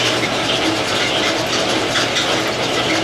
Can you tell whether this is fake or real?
real